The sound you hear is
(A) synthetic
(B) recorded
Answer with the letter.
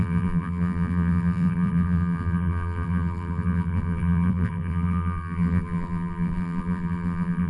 A